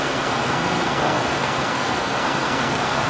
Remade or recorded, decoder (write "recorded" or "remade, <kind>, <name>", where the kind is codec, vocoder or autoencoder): remade, codec, SNAC